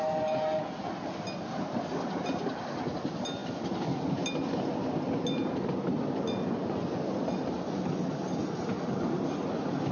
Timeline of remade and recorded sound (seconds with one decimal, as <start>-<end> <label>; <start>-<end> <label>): 0.0-9.9 recorded